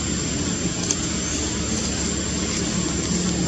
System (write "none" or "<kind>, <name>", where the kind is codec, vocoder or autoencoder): none